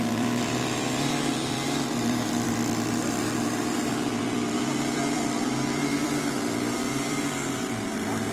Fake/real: fake